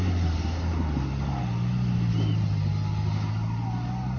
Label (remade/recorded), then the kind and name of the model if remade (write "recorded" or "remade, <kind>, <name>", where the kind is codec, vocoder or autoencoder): recorded